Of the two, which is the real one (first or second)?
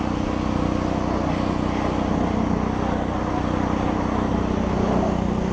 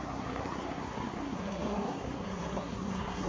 first